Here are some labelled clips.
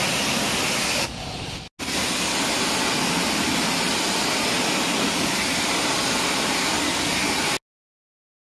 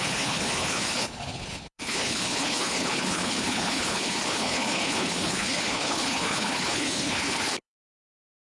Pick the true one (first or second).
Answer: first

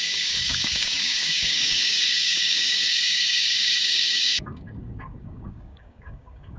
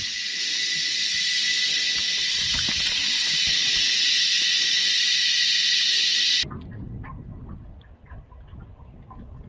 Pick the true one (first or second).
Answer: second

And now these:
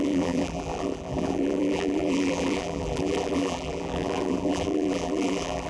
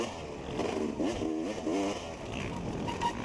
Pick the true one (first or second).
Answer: second